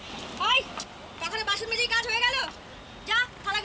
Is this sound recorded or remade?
recorded